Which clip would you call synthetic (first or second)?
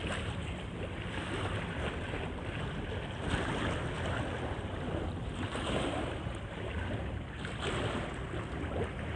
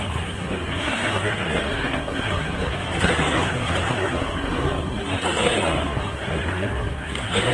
second